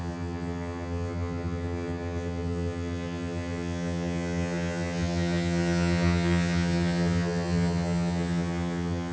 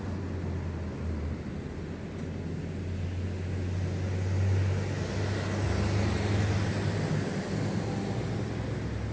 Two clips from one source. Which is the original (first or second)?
second